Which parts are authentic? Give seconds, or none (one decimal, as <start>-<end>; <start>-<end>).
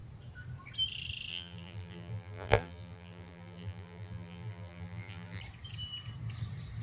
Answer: 0.0-1.3; 5.4-6.8